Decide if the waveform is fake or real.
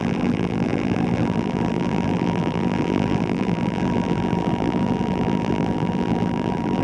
fake